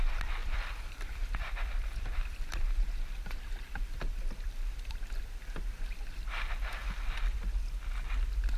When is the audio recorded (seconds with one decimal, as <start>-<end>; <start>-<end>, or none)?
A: 0.0-0.4; 5.3-8.6